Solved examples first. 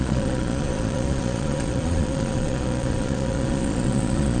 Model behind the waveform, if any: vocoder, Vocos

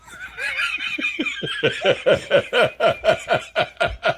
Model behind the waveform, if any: none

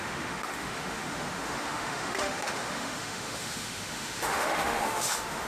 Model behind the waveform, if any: autoencoder, DAC-VAE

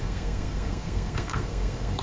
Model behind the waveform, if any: codec, SNAC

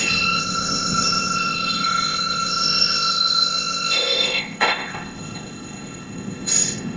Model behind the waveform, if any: codec, ZipCodec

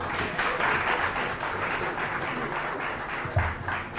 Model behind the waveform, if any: none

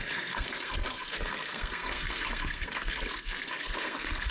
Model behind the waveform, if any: codec, SNAC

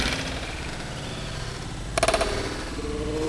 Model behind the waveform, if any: none